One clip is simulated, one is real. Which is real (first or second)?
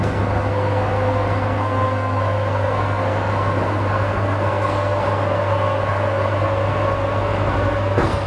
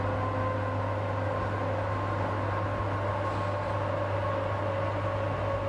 second